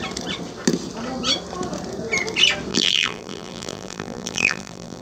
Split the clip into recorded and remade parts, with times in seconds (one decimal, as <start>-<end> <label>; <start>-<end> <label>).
0.0-2.7 recorded; 2.7-5.0 remade